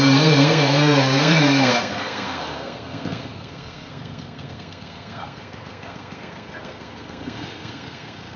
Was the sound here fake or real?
fake